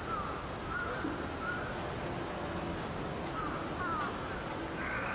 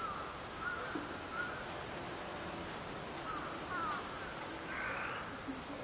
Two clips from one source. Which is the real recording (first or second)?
first